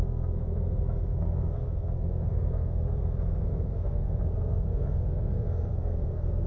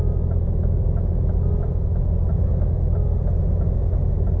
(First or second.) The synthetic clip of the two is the first